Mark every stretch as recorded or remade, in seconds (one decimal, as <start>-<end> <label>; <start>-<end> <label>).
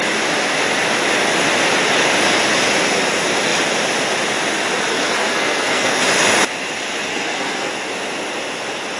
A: 0.0-4.9 recorded; 4.9-6.0 remade; 6.0-7.1 recorded; 7.1-7.7 remade; 7.7-9.0 recorded